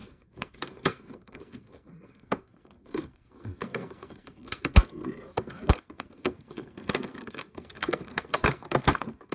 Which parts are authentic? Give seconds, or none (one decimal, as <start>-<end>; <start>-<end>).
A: none